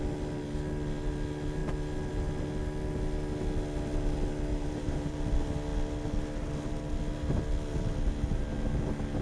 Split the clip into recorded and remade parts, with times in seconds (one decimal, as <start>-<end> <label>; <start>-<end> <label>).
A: 0.0-4.5 recorded; 4.5-5.2 remade; 5.2-9.2 recorded